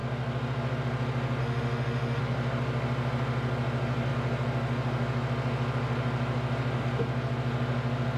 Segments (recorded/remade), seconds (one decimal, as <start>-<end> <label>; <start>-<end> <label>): 0.0-1.4 recorded; 1.4-2.2 remade; 2.2-8.2 recorded